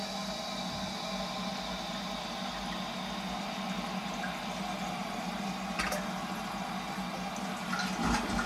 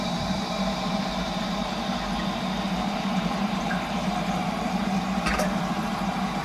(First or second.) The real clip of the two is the first